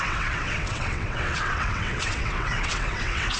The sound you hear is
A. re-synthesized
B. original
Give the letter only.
A